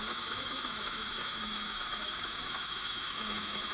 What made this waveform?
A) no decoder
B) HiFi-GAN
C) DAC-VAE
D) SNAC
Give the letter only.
C